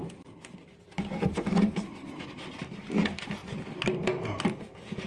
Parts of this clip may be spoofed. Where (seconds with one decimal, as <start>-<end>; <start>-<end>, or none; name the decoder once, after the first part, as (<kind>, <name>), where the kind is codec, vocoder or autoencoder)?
0.0-2.0 (vocoder, BigVGAN v2)